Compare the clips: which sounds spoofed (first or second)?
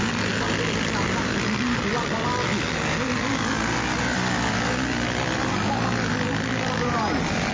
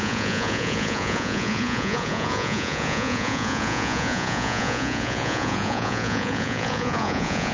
second